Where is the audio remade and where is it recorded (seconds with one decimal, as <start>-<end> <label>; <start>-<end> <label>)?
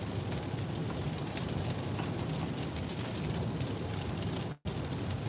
0.0-0.8 recorded; 0.8-1.3 remade; 1.3-2.9 recorded; 2.9-4.4 remade; 4.4-5.3 recorded